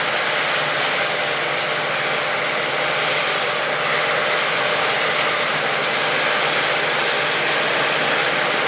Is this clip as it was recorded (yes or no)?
yes